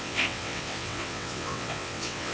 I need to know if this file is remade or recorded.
remade